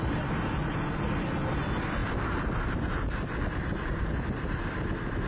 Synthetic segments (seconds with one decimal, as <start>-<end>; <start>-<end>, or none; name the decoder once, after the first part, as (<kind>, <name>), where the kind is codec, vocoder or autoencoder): none